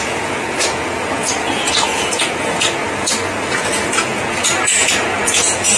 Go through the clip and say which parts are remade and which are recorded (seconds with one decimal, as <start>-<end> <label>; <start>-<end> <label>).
0.0-5.8 remade